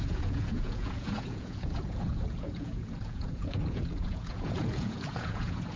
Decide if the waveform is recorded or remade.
remade